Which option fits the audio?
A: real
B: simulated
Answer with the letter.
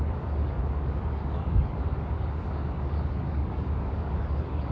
B